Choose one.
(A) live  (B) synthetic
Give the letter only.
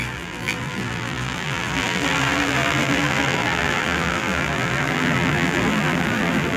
B